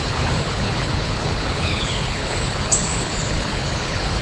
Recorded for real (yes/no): no